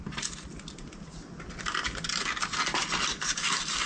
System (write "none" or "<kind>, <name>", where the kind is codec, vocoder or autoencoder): none